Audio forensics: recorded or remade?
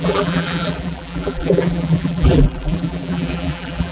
remade